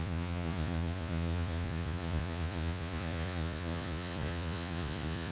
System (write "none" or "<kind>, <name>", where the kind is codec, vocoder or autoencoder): vocoder, Vocos